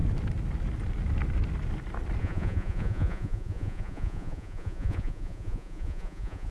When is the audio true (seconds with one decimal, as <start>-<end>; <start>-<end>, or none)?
0.0-2.2